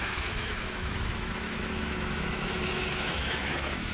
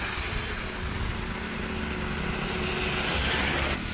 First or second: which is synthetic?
first